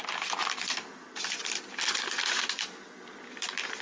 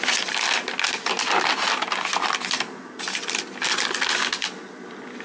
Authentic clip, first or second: second